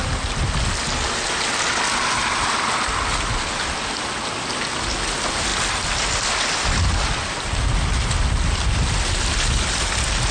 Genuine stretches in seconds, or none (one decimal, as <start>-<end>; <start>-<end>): 0.0-10.3